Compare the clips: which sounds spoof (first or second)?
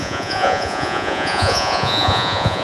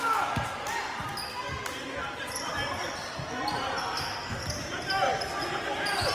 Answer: first